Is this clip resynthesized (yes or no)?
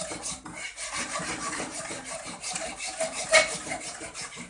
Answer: yes